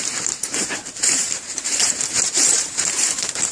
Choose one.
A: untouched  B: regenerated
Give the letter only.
B